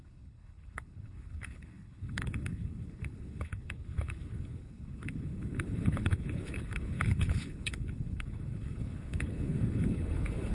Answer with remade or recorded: remade